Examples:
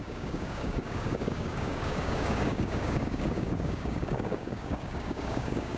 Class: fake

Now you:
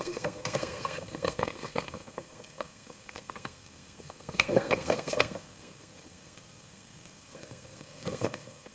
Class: fake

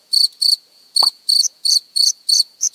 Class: fake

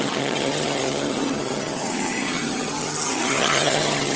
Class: fake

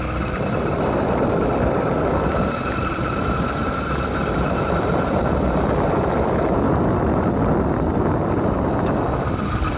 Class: real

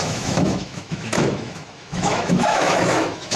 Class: fake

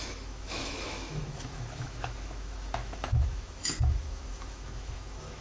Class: fake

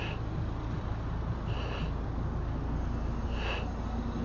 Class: real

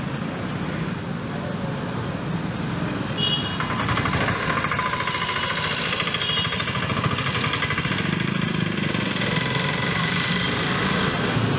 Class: real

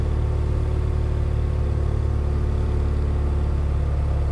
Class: real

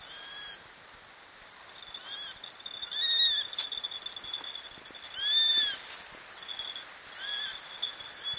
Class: real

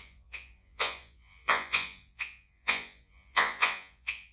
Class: fake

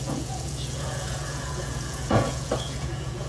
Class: fake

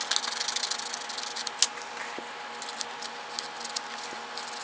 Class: real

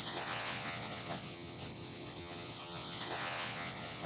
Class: fake